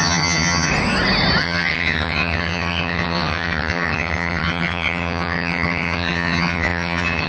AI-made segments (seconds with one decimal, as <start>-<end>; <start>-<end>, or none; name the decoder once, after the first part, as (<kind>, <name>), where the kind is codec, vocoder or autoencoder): 0.0-0.7 (vocoder, HiFi-GAN); 1.4-7.3